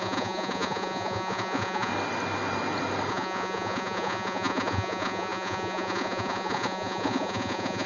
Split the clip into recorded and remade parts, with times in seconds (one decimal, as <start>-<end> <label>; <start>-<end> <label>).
0.0-1.9 remade; 1.9-3.1 recorded; 3.1-7.9 remade